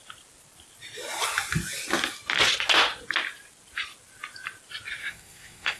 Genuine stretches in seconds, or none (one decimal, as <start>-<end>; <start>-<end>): 0.0-5.0